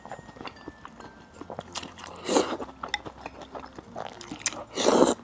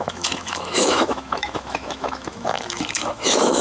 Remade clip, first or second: second